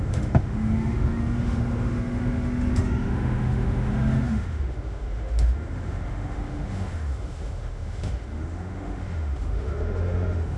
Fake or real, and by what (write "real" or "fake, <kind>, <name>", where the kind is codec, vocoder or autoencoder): fake, autoencoder, DAC-VAE